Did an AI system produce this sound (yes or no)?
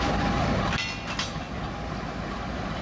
no